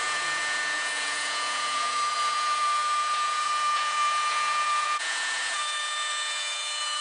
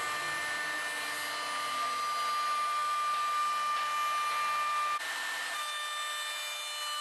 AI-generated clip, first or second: first